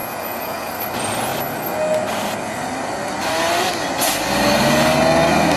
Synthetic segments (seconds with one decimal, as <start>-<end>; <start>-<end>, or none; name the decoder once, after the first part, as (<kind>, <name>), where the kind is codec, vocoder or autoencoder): 0.0-0.7 (vocoder, Vocos)

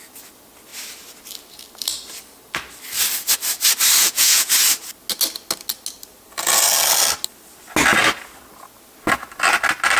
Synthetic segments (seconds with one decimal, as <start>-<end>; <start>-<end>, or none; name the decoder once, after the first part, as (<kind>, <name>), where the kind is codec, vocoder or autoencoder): 4.0-4.5 (vocoder, Vocos)

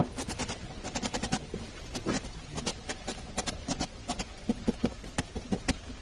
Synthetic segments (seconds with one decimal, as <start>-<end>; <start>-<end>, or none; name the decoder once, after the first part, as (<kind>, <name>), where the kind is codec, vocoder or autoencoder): 0.6-1.5 (vocoder, Vocos); 2.7-5.0

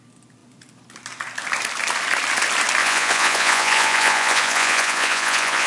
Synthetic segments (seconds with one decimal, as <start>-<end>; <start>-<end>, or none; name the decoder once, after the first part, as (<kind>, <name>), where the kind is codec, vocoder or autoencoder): 2.8-5.7 (vocoder, Vocos)